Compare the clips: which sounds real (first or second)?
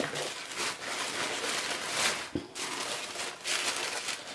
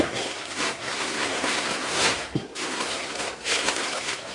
first